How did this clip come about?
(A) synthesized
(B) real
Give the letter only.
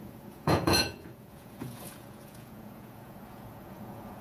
A